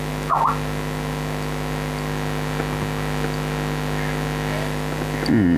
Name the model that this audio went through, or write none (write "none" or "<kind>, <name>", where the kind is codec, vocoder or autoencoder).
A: none